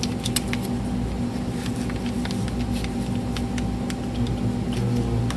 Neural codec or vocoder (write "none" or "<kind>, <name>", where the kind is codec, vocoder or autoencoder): none